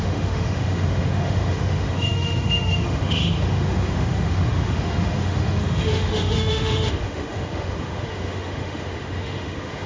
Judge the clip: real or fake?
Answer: fake